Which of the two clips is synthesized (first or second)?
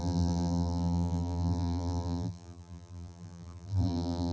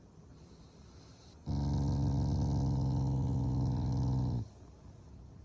first